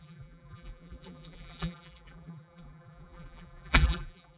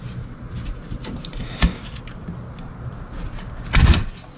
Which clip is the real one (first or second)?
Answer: second